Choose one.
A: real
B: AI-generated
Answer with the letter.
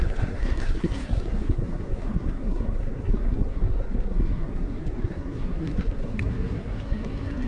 B